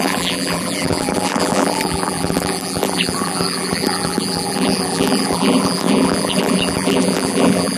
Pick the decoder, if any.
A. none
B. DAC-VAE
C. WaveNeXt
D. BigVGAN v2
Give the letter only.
D